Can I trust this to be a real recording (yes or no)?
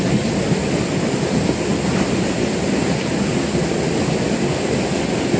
yes